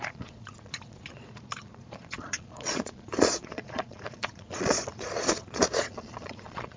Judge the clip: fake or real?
fake